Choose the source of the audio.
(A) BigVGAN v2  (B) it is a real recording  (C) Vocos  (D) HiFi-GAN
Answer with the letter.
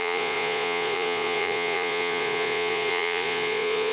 C